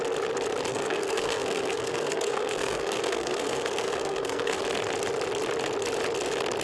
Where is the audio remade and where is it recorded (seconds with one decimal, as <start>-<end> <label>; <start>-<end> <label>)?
0.0-0.7 recorded; 0.7-4.6 remade; 4.6-6.6 recorded